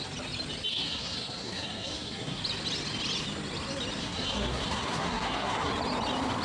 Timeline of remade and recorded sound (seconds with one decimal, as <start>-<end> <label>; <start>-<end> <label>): 0.0-0.7 recorded; 0.7-2.4 remade; 2.4-4.0 recorded; 4.0-5.7 remade; 5.7-6.4 recorded